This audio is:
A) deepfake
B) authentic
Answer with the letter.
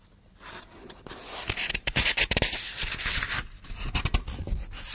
B